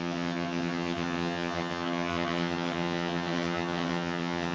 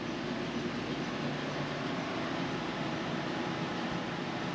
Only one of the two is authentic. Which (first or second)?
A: second